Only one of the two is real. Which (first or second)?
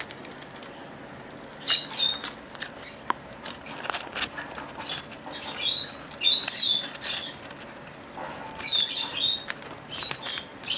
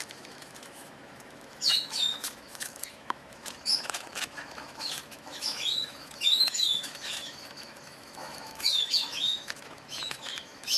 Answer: first